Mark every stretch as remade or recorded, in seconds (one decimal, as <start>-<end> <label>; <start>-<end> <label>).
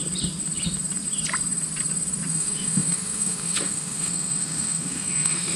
0.0-2.3 recorded; 2.3-5.6 remade